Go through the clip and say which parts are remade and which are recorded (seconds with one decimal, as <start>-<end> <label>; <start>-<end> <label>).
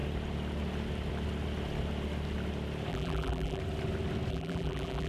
0.0-2.9 recorded; 2.9-3.6 remade; 3.6-4.3 recorded; 4.3-5.1 remade